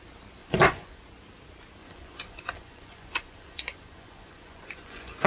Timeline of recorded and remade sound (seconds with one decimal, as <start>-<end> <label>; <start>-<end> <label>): 0.0-0.4 recorded; 0.4-1.0 remade; 1.0-1.8 recorded; 1.8-5.3 remade